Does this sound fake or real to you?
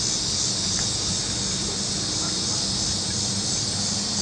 real